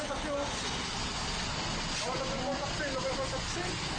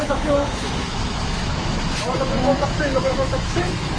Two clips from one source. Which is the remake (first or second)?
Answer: second